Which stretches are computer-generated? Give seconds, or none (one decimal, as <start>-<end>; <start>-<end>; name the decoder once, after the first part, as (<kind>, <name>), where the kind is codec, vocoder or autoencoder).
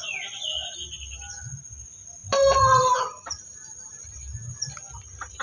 2.2-3.0 (vocoder, BigVGAN v2)